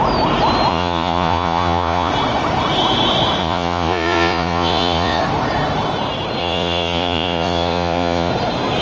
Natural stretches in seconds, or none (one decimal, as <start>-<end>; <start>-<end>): 0.0-0.7; 2.1-3.4; 5.2-6.4; 8.3-8.8